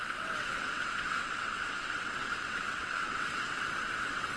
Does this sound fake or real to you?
fake